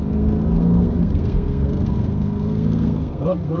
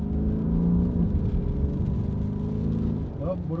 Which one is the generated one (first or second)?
first